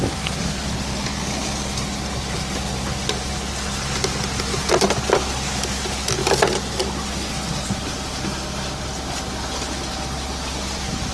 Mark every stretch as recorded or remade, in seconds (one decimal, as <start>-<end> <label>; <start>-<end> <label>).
0.0-11.1 recorded